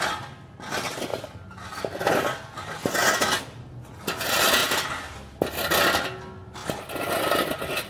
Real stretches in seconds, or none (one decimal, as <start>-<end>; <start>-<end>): 0.0-7.9